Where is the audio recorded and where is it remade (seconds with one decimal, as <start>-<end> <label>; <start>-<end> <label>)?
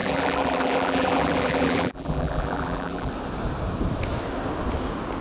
0.0-3.1 remade; 3.1-5.2 recorded